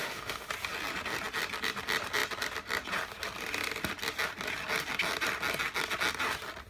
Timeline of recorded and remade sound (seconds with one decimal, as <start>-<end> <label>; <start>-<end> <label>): 0.0-0.5 remade; 0.5-6.7 recorded